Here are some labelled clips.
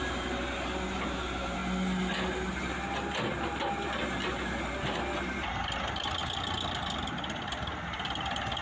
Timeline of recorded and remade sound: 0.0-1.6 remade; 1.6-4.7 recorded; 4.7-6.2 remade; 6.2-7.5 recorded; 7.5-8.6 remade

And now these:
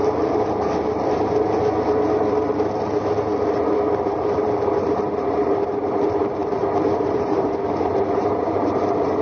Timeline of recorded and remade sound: 0.0-4.0 recorded; 4.0-9.2 remade